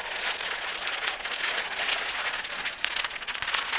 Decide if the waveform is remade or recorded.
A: remade